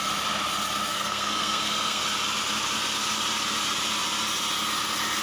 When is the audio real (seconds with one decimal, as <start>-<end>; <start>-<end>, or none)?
0.0-0.9; 2.0-5.2